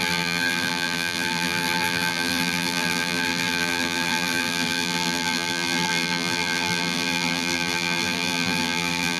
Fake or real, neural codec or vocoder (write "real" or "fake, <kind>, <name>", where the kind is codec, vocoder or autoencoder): fake, vocoder, BigVGAN v2